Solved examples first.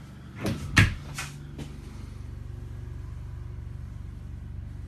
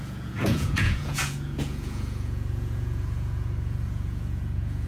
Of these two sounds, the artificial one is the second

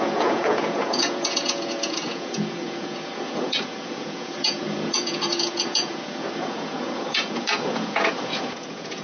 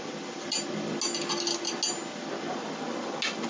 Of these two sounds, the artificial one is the first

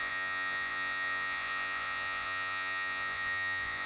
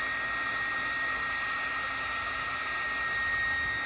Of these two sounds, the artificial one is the first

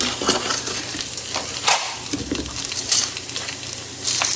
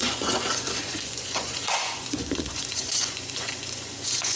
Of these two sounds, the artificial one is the second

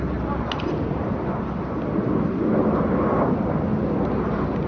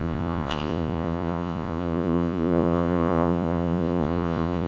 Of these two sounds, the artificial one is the second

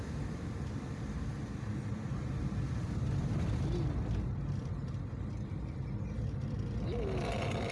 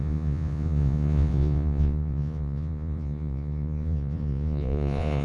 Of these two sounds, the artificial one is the second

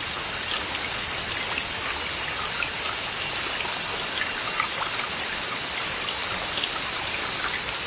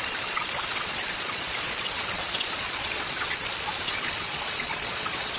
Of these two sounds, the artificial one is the second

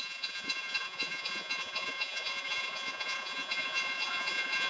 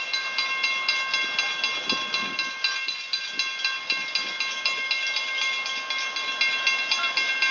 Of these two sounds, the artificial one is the first